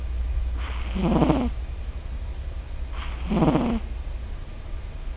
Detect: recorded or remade recorded